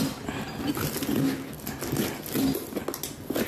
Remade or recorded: recorded